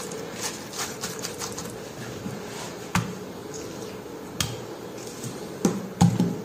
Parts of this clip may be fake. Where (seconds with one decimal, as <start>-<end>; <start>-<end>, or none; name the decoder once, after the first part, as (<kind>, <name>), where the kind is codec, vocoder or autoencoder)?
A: 0.0-1.6 (vocoder, BigVGAN v2); 2.1-3.4